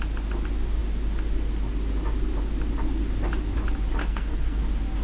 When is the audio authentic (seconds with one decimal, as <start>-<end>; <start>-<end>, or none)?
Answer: 0.0-4.0; 4.6-5.0